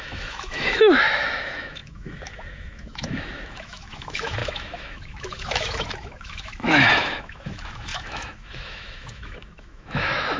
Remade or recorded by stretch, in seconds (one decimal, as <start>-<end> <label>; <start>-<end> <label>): 0.0-10.4 remade